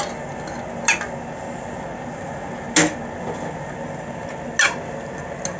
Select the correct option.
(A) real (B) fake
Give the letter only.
A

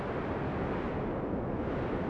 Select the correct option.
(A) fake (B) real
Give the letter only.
B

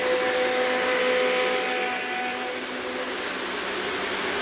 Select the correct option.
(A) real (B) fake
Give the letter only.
A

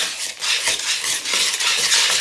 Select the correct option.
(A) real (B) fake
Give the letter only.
A